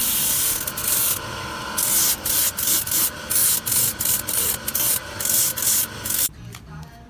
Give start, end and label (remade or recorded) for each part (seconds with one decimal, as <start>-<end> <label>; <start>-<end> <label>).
0.0-7.1 recorded